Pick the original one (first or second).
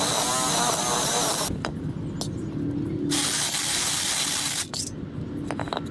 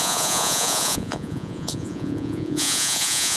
first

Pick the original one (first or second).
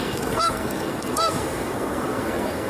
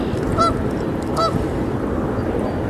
second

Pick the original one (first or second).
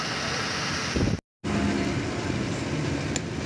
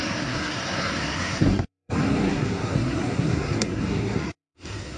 first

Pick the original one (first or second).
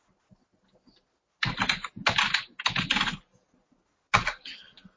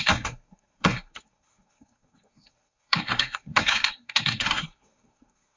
first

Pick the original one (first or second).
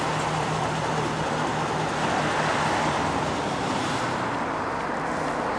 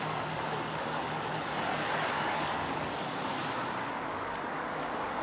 first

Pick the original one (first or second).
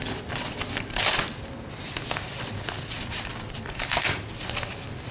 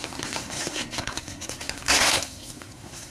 first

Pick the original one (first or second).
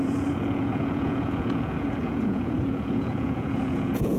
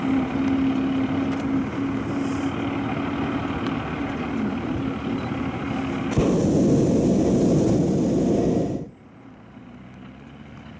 second